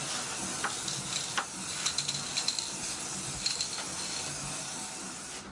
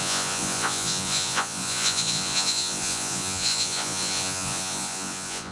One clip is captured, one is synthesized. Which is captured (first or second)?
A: first